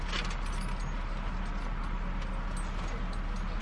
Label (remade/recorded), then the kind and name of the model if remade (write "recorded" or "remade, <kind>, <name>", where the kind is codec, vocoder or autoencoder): recorded